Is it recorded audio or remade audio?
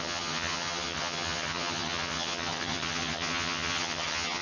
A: remade